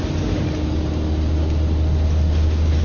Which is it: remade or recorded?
recorded